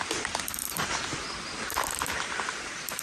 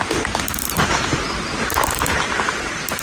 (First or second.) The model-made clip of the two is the first